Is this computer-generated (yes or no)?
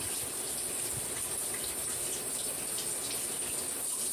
no